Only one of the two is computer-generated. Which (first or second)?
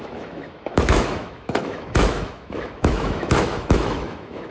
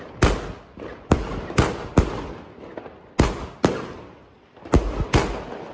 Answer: first